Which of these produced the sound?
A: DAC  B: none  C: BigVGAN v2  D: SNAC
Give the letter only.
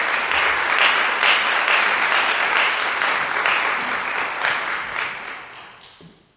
B